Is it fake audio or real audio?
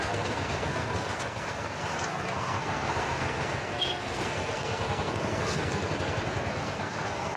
fake